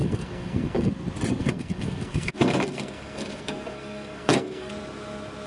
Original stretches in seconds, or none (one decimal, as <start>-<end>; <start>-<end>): 0.9-1.4; 4.7-5.5